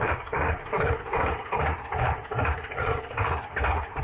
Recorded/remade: remade